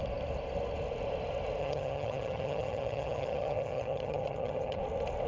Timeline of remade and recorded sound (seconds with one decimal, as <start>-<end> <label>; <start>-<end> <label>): 0.0-1.6 recorded; 1.6-4.8 remade; 4.8-5.3 recorded